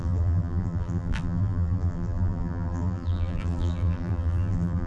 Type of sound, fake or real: fake